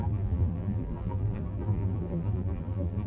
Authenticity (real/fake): fake